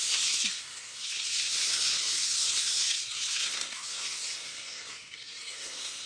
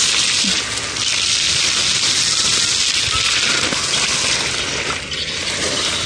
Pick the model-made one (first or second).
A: first